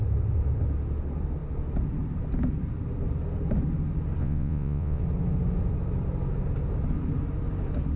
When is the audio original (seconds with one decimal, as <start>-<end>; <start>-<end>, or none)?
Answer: 0.0-4.2; 5.0-8.0